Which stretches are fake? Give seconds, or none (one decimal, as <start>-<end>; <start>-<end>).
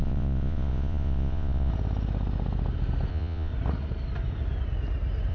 0.0-1.7; 3.1-3.5